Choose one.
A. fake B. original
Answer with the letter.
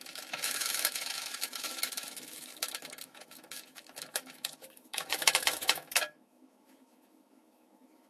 A